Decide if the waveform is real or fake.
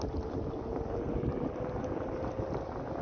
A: real